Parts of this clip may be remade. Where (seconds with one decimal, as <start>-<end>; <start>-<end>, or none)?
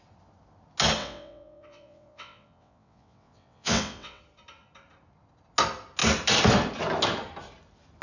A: 1.0-4.2